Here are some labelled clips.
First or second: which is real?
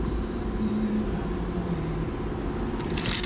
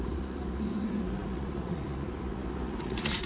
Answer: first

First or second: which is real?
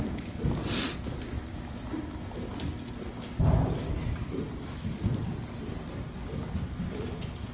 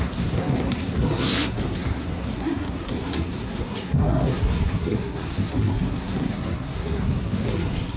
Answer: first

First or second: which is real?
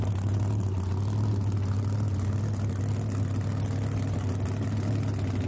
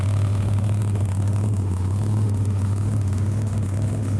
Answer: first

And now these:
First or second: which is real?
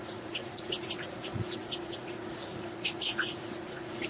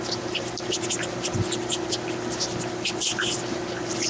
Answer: second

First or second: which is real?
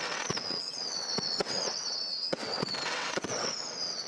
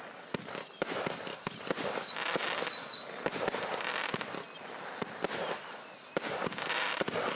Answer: second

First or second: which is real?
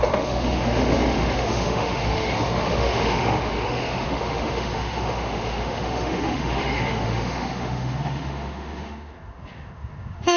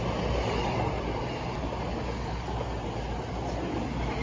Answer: second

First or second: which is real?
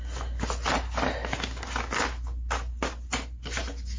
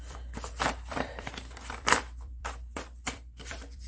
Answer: first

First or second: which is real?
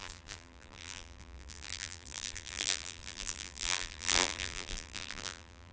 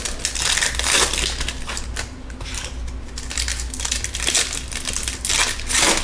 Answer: second